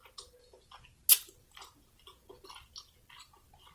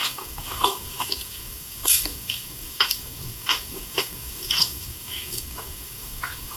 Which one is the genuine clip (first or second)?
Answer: first